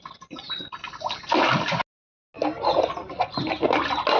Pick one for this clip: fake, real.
real